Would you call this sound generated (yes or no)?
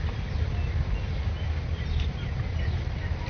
no